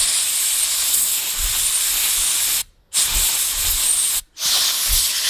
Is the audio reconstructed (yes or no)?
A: no